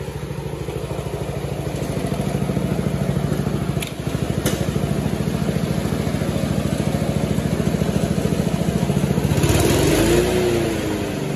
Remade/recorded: recorded